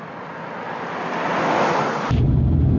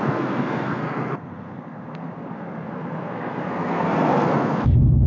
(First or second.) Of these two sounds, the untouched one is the first